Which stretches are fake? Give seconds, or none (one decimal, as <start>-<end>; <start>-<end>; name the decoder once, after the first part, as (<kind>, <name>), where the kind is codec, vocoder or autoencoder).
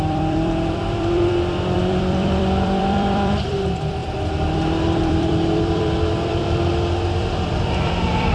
0.0-6.7 (vocoder, BigVGAN v2); 7.2-8.3